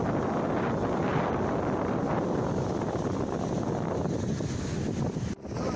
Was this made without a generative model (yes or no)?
yes